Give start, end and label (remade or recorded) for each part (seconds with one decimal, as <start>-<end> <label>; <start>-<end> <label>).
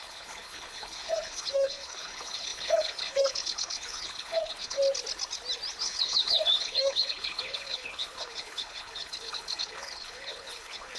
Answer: 0.0-4.8 remade; 4.8-5.8 recorded; 5.8-11.0 remade